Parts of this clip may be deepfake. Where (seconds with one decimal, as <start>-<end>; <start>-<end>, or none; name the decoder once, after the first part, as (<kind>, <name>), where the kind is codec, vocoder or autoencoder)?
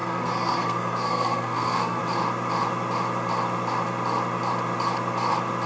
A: 0.0-2.0 (codec, SNAC)